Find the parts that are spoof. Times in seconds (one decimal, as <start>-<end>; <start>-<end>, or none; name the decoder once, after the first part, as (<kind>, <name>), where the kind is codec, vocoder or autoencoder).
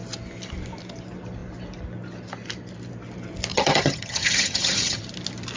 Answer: 3.5-5.0 (vocoder, HiFi-GAN)